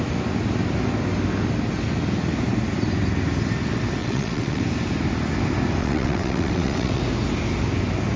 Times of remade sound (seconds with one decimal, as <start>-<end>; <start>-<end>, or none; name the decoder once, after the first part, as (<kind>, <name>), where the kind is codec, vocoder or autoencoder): 4.0-4.6 (vocoder, WaveNeXt); 5.8-7.0